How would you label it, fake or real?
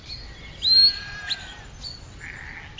real